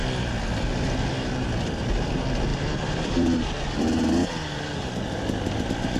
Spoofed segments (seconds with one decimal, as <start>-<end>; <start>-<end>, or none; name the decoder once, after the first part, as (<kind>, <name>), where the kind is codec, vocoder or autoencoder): 2.5-3.8 (vocoder, BigVGAN v2)